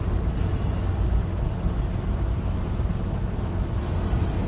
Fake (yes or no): no